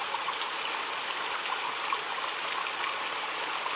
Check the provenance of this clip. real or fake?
real